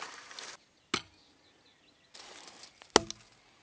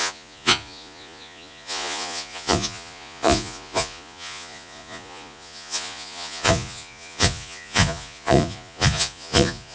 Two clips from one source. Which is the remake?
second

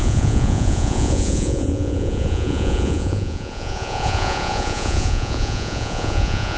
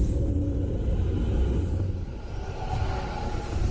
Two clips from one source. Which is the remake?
first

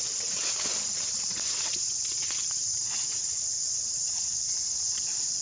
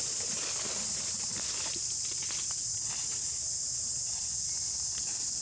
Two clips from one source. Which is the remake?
first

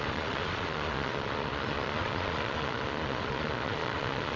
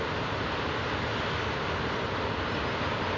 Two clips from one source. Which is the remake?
first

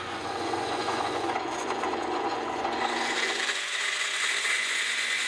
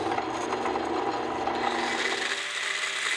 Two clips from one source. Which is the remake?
first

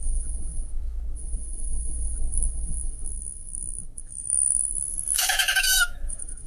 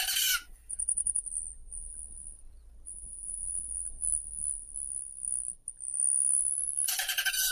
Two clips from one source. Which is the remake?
first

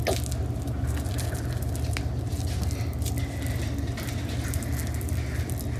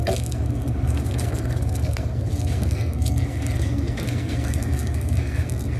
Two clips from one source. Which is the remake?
second